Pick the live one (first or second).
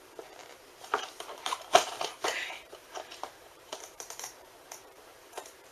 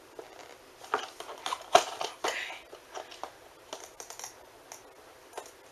second